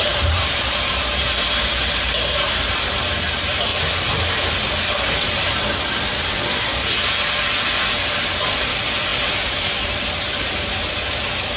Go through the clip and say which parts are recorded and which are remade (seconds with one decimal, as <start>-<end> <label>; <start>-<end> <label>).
0.0-3.7 remade; 3.7-4.5 recorded; 4.5-6.3 remade; 6.3-8.5 recorded; 8.5-11.6 remade